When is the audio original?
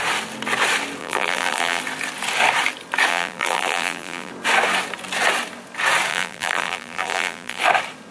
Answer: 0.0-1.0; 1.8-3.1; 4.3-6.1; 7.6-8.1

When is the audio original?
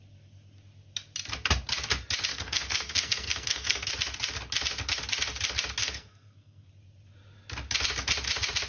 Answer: 0.0-2.3; 3.9-5.8; 6.7-8.7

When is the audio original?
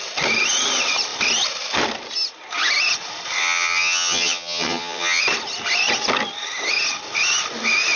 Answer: 0.0-3.4; 5.2-8.0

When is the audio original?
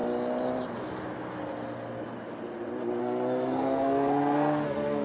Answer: 0.0-3.0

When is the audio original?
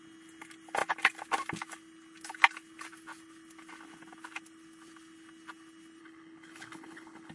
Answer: 0.0-6.0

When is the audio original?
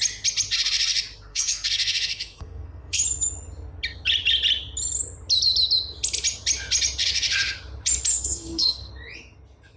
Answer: 0.0-1.3; 3.0-8.1; 8.9-9.8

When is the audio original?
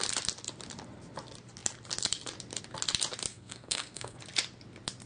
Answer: 0.0-3.3; 4.2-5.1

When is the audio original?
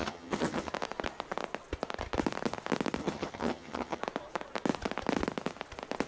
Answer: 0.7-3.0; 4.0-6.1